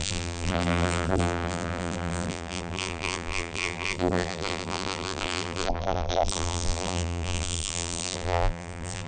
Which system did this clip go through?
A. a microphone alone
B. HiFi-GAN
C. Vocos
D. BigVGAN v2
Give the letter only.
D